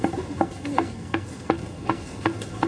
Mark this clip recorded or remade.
remade